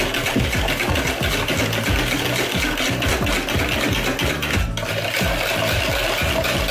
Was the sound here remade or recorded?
recorded